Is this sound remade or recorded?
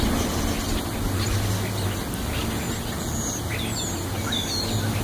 recorded